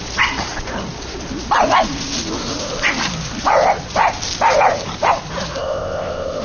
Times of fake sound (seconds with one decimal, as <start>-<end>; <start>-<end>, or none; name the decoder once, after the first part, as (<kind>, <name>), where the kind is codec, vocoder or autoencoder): 5.6-6.4 (codec, ZipCodec)